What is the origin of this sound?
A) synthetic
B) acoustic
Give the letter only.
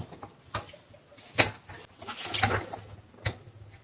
B